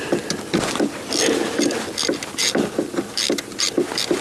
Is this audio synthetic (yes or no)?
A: no